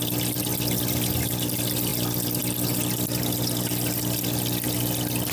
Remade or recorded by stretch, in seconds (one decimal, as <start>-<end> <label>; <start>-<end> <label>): 0.0-5.3 recorded